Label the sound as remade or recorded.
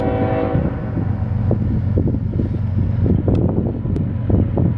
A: recorded